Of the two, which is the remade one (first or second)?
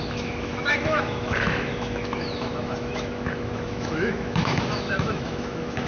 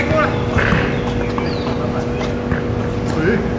first